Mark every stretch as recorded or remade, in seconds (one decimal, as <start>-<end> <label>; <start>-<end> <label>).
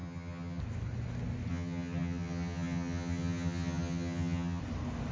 0.0-0.6 remade; 0.6-1.5 recorded; 1.5-4.6 remade; 4.6-5.1 recorded